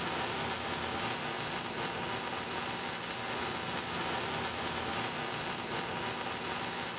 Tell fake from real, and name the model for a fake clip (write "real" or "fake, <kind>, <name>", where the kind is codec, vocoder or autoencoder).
real